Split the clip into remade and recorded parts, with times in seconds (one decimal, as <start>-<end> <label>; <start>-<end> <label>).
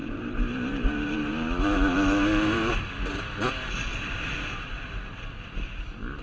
0.0-2.7 remade; 2.7-3.9 recorded; 3.9-5.3 remade; 5.3-6.2 recorded